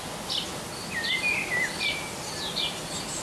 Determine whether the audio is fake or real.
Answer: real